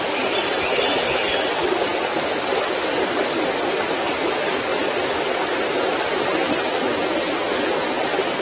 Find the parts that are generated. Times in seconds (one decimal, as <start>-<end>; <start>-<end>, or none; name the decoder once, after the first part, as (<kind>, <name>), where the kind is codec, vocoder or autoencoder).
none